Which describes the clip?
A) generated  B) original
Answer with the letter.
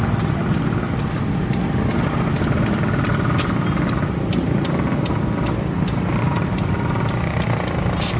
B